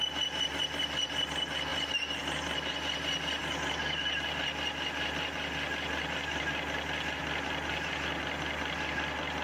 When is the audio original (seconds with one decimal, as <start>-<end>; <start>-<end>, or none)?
0.0-9.4